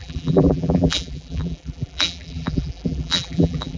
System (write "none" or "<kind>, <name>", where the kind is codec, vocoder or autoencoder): vocoder, BigVGAN v2